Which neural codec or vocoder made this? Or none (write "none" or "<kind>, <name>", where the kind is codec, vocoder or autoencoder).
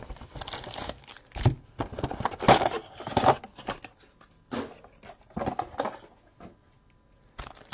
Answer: none